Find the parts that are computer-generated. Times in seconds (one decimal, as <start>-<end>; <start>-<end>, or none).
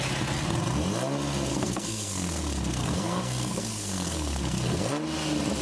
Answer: 1.5-4.9